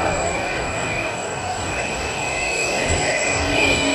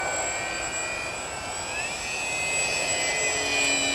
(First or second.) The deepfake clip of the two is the first